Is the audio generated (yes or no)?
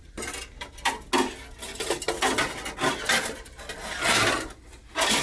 no